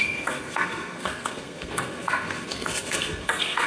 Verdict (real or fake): fake